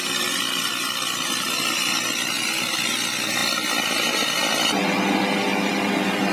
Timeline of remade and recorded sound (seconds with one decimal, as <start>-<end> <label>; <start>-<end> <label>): 0.0-6.3 recorded